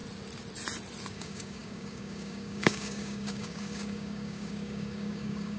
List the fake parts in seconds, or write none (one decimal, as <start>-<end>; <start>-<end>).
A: 1.1-5.6